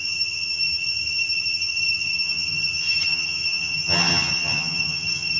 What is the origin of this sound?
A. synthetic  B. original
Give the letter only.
A